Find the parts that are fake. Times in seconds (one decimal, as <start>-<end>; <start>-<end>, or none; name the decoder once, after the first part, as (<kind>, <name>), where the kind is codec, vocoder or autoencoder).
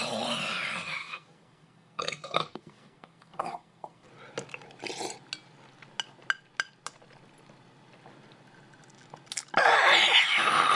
1.0-4.1 (codec, SNAC)